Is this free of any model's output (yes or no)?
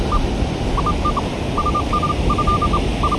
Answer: yes